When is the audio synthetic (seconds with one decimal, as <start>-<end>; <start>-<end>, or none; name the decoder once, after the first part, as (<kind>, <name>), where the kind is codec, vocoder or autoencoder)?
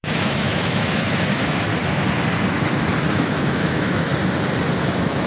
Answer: 0.0-1.7 (autoencoder, DAC-VAE); 3.1-4.1; 4.8-5.3